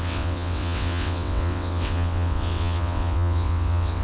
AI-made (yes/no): yes